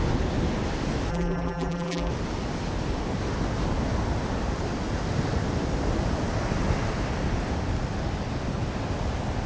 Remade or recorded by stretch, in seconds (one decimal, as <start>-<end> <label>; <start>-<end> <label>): 0.0-1.1 recorded; 1.1-2.1 remade; 2.1-9.5 recorded